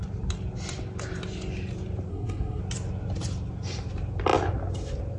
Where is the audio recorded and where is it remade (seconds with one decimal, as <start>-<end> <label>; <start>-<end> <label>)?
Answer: 0.0-2.1 recorded; 2.1-2.6 remade; 2.6-5.2 recorded